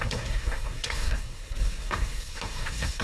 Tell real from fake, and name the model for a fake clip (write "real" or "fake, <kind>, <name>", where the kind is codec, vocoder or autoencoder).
fake, codec, SNAC